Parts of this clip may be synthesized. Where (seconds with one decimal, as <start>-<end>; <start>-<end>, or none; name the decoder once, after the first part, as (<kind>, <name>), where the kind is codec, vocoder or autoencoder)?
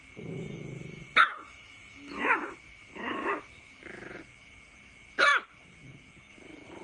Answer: 0.8-4.2 (autoencoder, DAC-VAE)